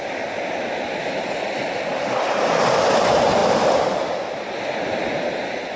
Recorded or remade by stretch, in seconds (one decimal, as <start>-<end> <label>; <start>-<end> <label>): 0.0-5.8 recorded